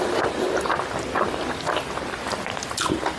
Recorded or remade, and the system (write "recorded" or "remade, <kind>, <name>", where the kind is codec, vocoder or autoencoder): recorded